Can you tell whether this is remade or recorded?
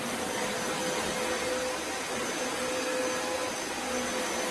recorded